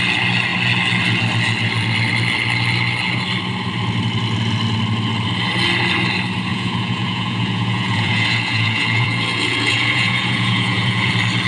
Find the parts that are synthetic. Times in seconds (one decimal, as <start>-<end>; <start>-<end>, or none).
6.5-11.1